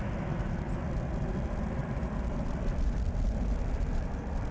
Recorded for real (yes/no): no